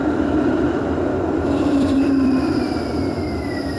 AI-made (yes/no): yes